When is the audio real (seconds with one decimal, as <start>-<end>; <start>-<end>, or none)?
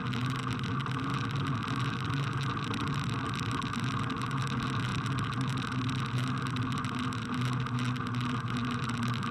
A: 0.0-9.3